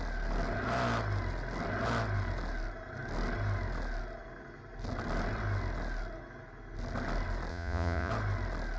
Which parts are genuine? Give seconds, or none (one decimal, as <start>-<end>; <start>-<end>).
0.0-7.5; 8.1-8.8